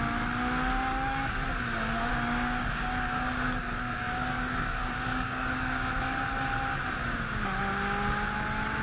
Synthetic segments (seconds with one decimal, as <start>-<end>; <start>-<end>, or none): 0.9-1.5; 2.1-5.9; 7.0-7.6